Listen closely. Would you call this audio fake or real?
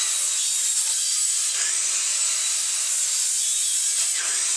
real